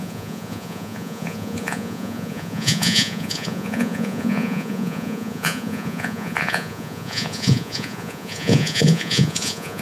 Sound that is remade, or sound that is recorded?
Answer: remade